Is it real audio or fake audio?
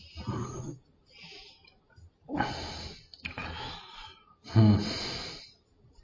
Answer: real